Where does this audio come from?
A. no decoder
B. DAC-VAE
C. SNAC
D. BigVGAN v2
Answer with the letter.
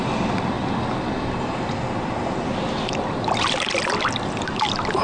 A